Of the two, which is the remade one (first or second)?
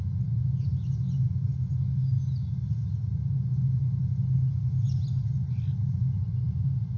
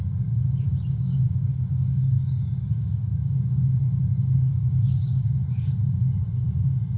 second